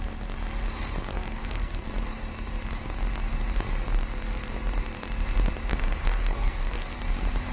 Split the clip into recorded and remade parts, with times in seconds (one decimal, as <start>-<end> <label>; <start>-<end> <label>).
0.0-1.1 recorded; 1.1-1.9 remade; 1.9-5.7 recorded; 5.7-7.0 remade; 7.0-7.5 recorded